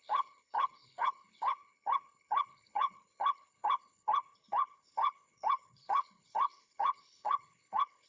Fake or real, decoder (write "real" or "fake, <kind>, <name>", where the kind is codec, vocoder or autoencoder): fake, codec, HILCodec